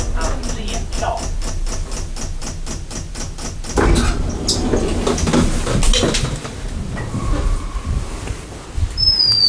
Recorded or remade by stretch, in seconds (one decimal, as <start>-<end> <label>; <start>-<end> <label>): 0.0-9.5 recorded